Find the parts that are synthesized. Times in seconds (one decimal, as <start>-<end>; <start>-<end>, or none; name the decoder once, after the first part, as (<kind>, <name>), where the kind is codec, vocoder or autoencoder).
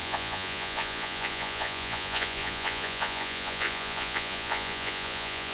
0.0-5.5 (vocoder, Vocos)